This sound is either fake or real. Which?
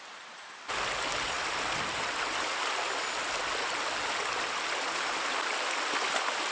real